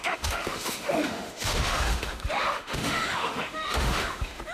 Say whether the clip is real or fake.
fake